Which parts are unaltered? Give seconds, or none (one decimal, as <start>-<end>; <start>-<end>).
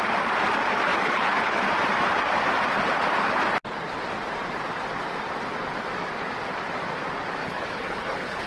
0.0-0.9; 1.6-7.4